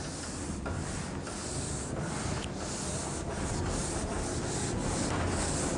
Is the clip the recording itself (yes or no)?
yes